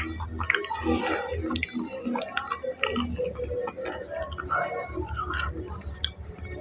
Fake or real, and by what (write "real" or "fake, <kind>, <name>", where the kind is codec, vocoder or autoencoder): real